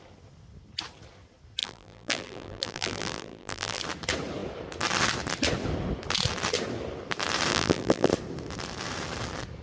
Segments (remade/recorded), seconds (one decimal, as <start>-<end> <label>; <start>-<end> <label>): 0.0-1.6 recorded; 1.6-3.8 remade; 3.8-7.5 recorded; 7.5-8.1 remade; 8.1-9.6 recorded